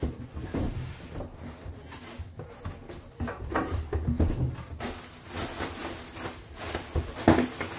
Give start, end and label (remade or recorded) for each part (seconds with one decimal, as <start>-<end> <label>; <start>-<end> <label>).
0.0-5.8 recorded; 5.8-6.6 remade; 6.6-7.8 recorded